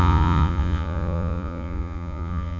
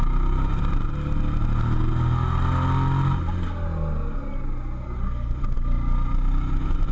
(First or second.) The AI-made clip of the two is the first